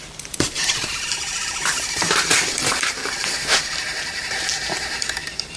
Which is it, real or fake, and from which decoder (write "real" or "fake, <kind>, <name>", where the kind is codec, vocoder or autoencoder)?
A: fake, vocoder, BigVGAN v2